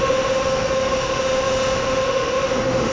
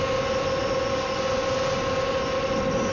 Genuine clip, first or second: second